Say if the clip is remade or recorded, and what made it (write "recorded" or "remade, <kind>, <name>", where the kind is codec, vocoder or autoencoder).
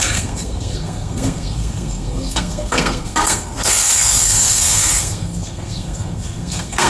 remade, codec, SNAC